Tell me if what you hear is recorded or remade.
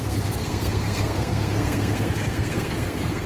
remade